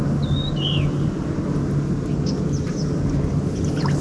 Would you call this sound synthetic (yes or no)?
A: no